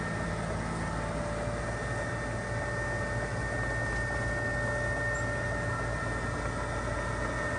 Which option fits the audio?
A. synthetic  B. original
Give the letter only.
B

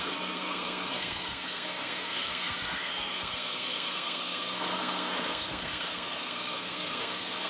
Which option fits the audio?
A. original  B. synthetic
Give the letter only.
B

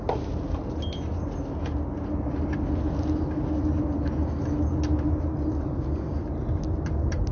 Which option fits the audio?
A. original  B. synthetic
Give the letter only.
A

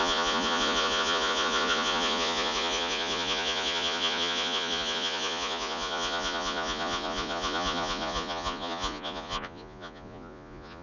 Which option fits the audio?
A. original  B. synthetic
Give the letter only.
B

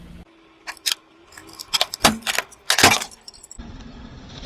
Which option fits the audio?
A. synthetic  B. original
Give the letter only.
B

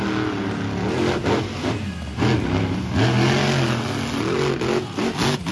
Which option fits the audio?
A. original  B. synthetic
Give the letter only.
A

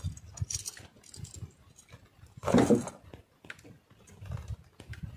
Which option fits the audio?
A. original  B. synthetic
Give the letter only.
A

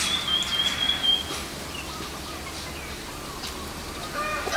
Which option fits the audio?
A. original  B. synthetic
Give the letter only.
A